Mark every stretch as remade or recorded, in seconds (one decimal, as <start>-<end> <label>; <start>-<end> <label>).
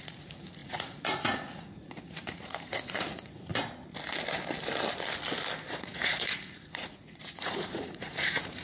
0.0-3.5 remade; 3.5-5.7 recorded; 5.7-8.6 remade